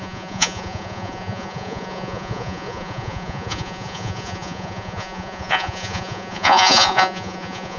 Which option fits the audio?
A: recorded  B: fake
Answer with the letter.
B